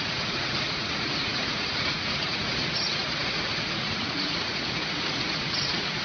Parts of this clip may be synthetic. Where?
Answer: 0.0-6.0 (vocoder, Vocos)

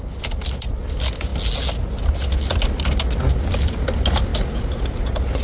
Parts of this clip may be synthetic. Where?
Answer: none

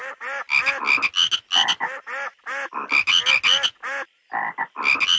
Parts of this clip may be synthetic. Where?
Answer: none

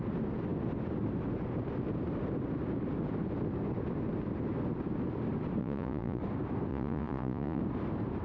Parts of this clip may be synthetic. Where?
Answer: 5.6-6.2 (vocoder, Vocos); 6.7-7.6